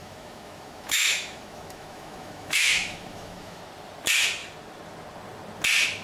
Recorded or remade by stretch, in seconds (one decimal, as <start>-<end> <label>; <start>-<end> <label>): 0.0-3.6 remade; 3.6-6.0 recorded